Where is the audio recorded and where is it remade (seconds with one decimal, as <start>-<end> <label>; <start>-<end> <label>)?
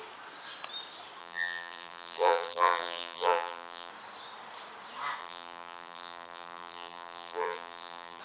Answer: 0.0-1.2 recorded; 1.2-3.9 remade; 3.9-5.2 recorded; 5.2-8.2 remade